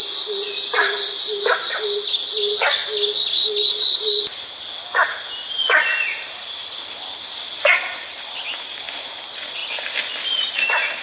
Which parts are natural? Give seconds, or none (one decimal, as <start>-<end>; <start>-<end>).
0.0-11.0